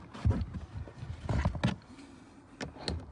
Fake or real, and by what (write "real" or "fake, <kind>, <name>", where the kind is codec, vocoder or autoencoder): real